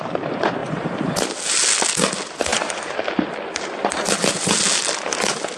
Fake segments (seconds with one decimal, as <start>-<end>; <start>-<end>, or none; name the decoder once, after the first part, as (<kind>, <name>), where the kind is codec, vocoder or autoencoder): none